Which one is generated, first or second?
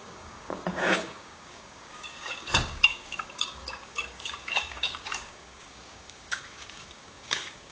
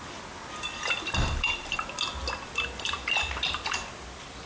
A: first